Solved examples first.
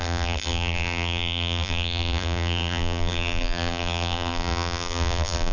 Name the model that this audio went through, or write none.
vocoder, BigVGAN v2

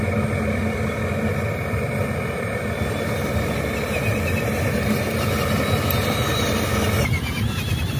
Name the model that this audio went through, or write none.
none